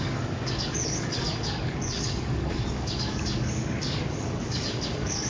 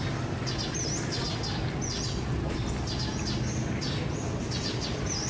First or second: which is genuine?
second